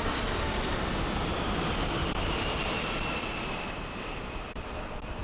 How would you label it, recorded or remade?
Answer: recorded